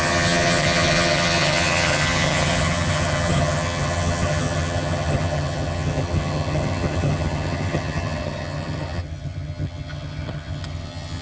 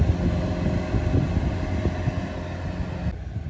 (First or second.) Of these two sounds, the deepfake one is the first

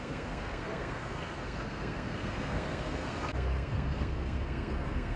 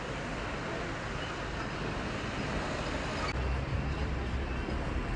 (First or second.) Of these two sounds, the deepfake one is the first